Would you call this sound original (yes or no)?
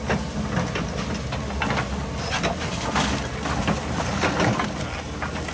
yes